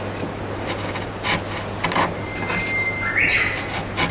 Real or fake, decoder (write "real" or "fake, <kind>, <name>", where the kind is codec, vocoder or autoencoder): real